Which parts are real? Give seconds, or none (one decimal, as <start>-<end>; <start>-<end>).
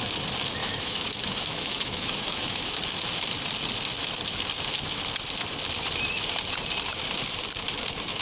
0.0-0.6; 2.7-8.2